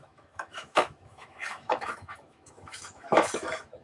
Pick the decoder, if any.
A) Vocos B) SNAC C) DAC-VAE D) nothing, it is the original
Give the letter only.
C